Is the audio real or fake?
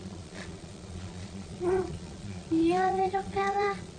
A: fake